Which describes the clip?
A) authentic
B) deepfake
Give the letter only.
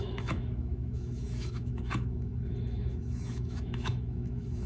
B